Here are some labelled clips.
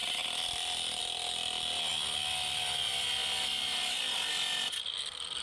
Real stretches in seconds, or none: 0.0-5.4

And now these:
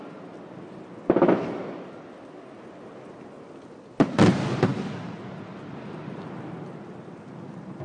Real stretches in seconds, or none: 0.0-7.8

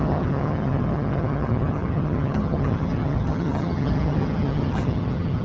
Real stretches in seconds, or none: none

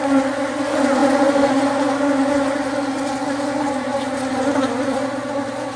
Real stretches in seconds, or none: 0.0-5.8

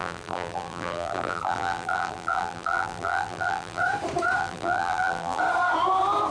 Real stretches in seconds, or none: 3.8-4.4; 5.4-6.3

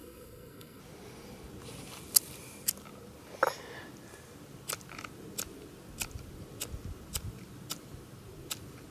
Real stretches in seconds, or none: 0.8-8.9

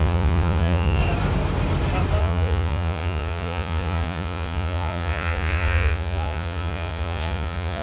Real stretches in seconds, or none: 1.0-2.2